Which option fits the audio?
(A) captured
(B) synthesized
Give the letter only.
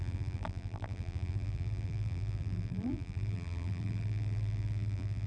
B